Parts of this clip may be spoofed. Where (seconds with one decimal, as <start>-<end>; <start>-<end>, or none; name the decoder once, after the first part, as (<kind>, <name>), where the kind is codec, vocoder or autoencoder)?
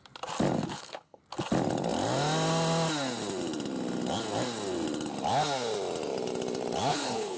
0.7-1.2 (codec, HILCodec); 6.9-7.4